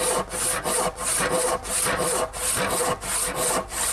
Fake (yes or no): no